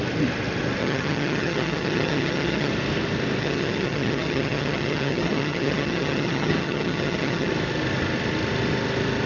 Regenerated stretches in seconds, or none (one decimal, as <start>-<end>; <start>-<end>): 0.8-2.7; 3.4-7.5